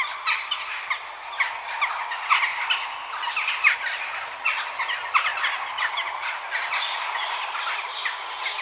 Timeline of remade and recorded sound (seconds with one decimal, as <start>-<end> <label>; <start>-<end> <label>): 0.0-8.6 recorded